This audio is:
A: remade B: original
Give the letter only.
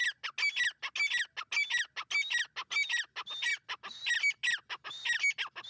B